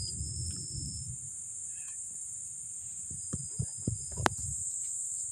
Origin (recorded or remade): remade